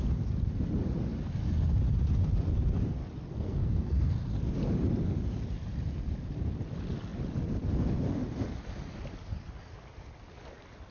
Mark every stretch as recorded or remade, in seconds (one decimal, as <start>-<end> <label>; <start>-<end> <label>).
0.0-3.3 recorded; 3.3-4.1 remade; 4.1-10.9 recorded